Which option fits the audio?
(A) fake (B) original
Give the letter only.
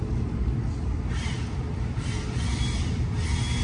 B